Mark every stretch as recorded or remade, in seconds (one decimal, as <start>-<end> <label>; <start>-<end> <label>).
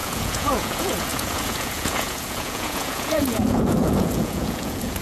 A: 0.0-5.0 remade